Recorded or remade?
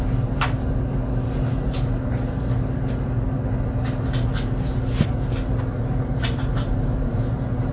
recorded